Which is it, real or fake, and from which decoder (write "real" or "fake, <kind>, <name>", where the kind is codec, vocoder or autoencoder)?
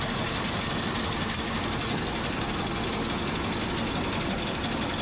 real